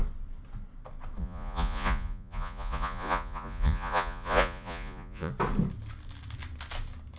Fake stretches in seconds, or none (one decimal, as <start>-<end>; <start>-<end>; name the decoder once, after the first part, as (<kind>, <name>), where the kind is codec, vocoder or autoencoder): 1.2-5.3 (vocoder, Vocos)